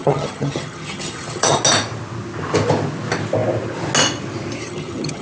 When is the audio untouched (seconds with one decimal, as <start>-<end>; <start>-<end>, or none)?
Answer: 1.6-4.6